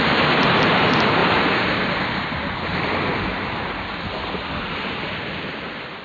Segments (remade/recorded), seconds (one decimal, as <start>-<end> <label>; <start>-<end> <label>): 0.0-6.0 recorded